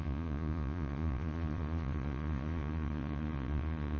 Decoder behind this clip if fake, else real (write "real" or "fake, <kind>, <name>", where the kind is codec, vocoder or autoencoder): fake, vocoder, Vocos